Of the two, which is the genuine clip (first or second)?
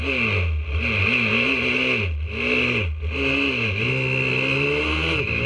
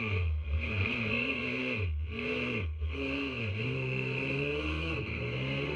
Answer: first